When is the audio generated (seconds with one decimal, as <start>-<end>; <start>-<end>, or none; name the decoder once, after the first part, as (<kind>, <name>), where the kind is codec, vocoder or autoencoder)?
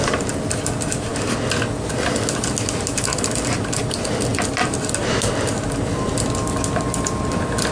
none